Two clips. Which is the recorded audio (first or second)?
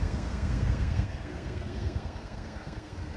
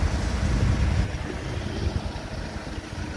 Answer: second